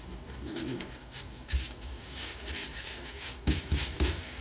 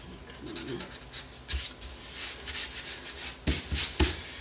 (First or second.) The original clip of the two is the second